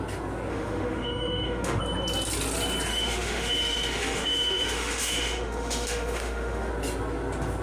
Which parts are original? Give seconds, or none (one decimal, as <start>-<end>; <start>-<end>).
0.0-0.5; 1.8-2.9; 6.7-7.6